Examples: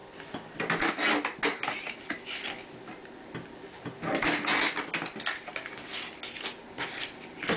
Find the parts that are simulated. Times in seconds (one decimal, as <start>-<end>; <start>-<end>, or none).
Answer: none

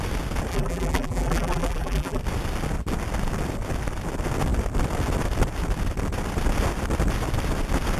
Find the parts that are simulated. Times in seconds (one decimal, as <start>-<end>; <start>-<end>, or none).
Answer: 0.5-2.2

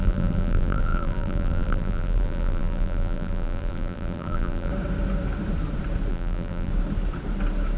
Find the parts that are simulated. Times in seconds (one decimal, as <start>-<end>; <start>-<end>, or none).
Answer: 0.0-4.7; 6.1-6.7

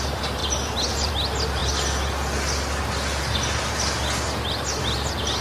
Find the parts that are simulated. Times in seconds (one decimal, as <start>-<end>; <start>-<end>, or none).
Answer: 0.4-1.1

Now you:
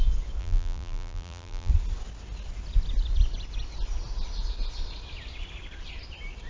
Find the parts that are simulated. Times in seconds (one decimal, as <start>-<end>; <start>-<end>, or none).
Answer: 0.4-1.7

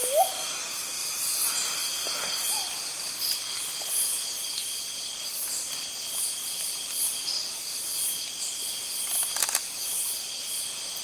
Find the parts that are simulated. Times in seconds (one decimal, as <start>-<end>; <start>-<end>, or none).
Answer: 1.0-1.5; 4.6-6.0; 6.4-7.2; 9.6-10.5

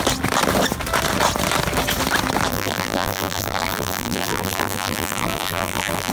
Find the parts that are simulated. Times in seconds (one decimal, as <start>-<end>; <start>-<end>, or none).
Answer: 2.5-6.1